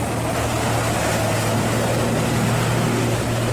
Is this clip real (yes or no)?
yes